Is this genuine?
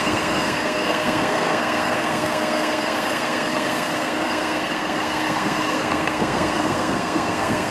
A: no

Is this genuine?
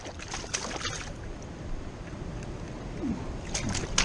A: yes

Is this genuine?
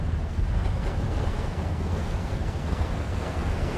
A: no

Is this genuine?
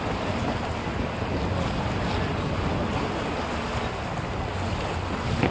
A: yes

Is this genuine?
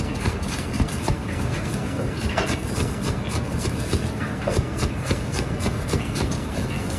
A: no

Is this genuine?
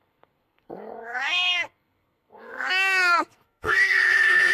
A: no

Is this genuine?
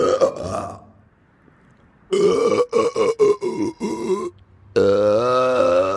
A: yes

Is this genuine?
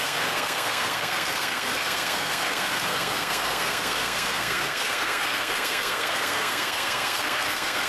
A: no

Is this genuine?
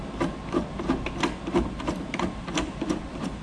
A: yes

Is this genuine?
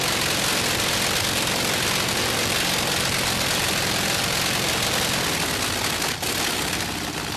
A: yes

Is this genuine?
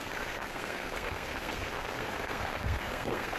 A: no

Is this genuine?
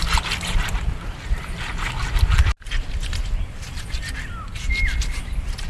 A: yes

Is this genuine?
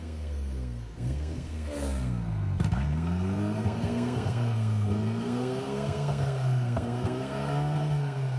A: no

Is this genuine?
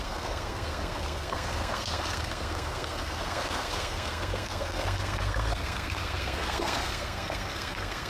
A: no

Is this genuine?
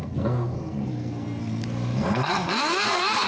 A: no